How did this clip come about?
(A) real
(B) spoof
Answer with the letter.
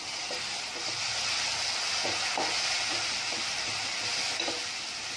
A